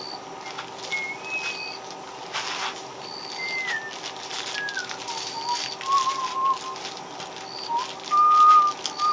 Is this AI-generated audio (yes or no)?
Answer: no